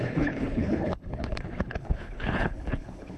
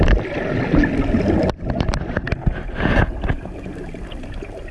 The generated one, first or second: first